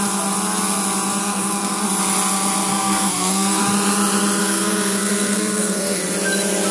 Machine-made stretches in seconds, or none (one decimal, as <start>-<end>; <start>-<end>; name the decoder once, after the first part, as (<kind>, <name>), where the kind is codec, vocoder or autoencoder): 1.2-1.8 (codec, SNAC); 2.7-3.6; 4.4-6.0